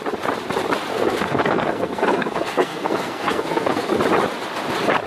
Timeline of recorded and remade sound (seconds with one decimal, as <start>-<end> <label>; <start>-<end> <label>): 0.0-0.9 recorded; 0.9-4.0 remade; 4.0-5.1 recorded